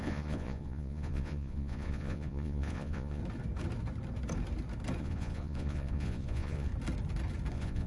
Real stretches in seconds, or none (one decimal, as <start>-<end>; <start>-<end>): 3.2-5.0; 6.7-7.5